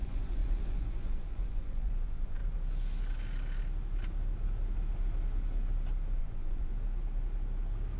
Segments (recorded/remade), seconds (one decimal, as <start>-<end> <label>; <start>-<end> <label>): 0.0-2.4 remade; 2.4-6.2 recorded; 6.2-6.7 remade; 6.7-8.0 recorded

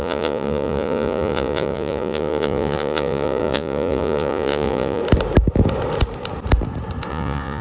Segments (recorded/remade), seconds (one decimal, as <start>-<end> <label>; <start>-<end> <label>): 0.0-5.0 remade; 5.0-7.1 recorded; 7.1-7.6 remade

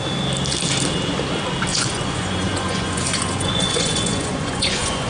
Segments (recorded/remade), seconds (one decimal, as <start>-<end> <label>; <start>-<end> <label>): 0.0-1.7 recorded; 1.7-5.1 remade

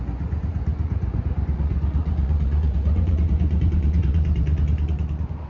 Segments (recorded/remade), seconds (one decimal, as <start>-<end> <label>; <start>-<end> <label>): 0.0-5.5 remade

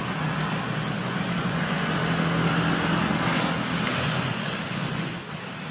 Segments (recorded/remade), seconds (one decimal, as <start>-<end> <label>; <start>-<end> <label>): 0.0-1.0 recorded; 1.0-2.0 remade; 2.0-3.9 recorded; 3.9-5.3 remade; 5.3-5.7 recorded

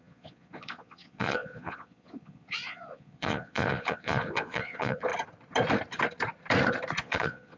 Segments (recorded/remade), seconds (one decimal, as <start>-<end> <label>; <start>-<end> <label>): 0.0-5.1 remade; 5.1-7.0 recorded; 7.0-7.6 remade